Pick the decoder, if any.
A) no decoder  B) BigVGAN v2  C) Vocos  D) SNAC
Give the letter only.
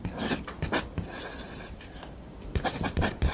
A